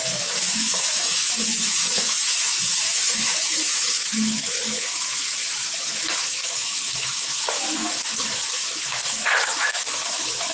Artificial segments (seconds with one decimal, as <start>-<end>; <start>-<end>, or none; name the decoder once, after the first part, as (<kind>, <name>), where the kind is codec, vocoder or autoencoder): 0.0-10.5 (autoencoder, DAC-VAE)